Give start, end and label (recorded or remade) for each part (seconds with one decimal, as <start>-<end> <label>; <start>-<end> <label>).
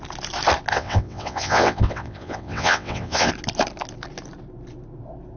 0.0-0.7 recorded; 0.7-3.3 remade; 3.3-5.4 recorded